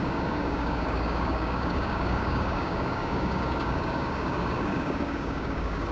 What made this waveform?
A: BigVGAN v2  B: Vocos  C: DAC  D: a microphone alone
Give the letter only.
C